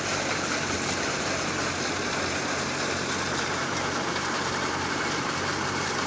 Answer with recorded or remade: remade